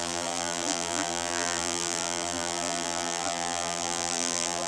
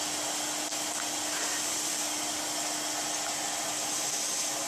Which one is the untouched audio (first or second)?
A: second